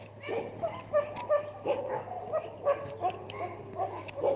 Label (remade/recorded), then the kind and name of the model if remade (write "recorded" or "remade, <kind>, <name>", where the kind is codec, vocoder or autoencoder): recorded